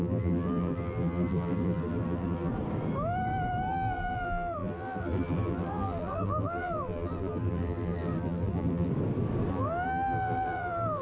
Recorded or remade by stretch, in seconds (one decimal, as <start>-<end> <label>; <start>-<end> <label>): 0.0-2.5 remade; 2.5-3.7 recorded; 3.7-8.9 remade; 8.9-9.5 recorded; 9.5-11.0 remade